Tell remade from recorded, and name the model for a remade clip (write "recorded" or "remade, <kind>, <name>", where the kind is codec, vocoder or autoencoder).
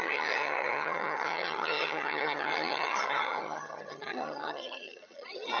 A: remade, vocoder, HiFi-GAN